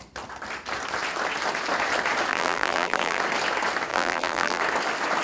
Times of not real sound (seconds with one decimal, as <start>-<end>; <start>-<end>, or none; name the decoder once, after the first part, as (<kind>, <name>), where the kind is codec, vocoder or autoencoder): 2.3-3.2 (vocoder, BigVGAN v2); 3.9-4.6